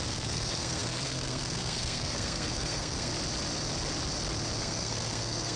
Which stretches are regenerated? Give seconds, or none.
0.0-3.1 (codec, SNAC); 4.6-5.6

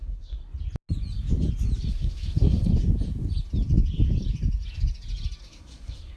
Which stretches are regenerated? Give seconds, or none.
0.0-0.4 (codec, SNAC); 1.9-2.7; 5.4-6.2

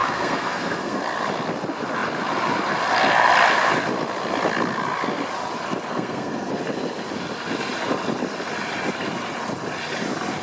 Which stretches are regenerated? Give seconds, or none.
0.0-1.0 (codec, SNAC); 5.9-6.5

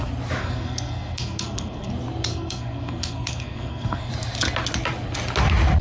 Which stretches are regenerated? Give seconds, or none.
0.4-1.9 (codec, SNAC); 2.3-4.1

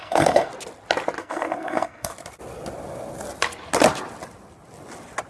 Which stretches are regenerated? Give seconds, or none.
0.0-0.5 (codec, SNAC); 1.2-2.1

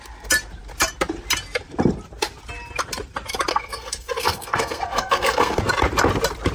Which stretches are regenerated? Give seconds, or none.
3.5-5.6 (codec, SNAC)